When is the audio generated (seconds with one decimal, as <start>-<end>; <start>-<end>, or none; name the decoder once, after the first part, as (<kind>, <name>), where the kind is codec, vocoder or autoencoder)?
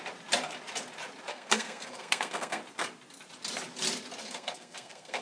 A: 1.3-2.6 (codec, SNAC); 4.2-5.2